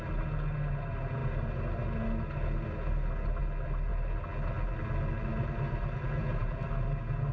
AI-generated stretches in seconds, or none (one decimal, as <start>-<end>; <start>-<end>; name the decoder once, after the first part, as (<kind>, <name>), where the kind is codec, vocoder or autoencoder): none